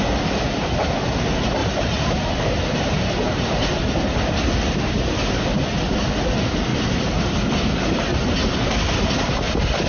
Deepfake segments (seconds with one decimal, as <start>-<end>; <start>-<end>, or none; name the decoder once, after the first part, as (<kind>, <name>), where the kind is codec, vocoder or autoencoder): 1.6-3.8 (vocoder, BigVGAN v2); 6.7-7.3; 8.1-8.9